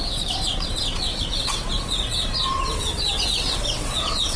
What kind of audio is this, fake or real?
fake